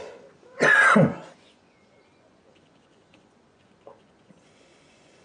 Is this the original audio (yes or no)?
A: no